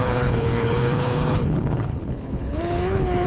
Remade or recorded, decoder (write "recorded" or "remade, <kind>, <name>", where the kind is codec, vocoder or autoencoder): remade, codec, HILCodec